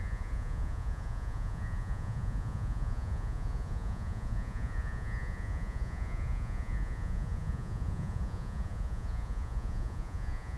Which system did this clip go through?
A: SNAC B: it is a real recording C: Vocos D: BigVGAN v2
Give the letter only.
C